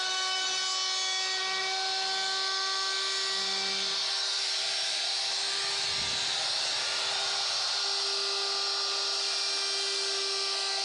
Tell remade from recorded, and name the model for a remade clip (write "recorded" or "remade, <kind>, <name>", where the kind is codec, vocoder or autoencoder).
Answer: recorded